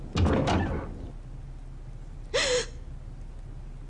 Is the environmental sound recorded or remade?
recorded